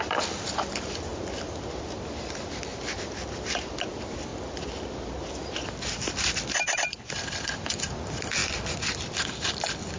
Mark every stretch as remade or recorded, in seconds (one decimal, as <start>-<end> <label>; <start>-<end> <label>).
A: 0.0-1.1 remade; 1.1-2.0 recorded; 2.0-8.4 remade; 8.4-8.9 recorded; 8.9-10.0 remade